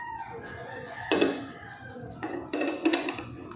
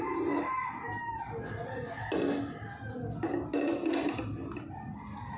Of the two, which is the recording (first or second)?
second